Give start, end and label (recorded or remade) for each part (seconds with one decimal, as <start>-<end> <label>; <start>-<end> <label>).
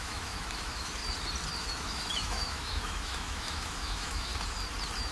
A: 0.0-1.0 remade; 1.0-1.6 recorded; 1.6-4.3 remade; 4.3-5.1 recorded